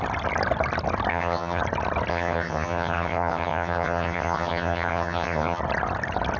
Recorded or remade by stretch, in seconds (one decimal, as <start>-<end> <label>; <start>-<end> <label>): 0.0-1.1 recorded; 1.1-1.6 remade; 1.6-2.1 recorded; 2.1-5.6 remade; 5.6-6.4 recorded